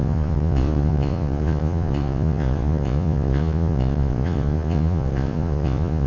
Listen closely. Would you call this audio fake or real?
fake